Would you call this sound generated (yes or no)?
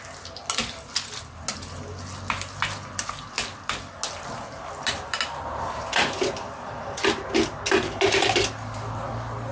no